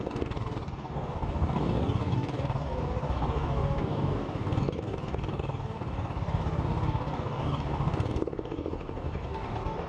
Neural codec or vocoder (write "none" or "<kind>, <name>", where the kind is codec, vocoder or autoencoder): codec, DAC